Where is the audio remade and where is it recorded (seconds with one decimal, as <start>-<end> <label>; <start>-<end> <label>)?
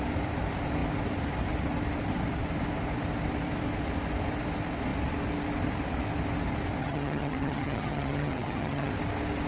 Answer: 0.0-6.8 recorded; 6.8-8.9 remade; 8.9-9.5 recorded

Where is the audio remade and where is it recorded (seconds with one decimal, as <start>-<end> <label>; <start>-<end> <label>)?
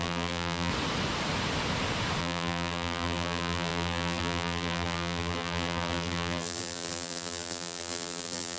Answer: 0.0-0.7 remade; 0.7-2.2 recorded; 2.2-8.6 remade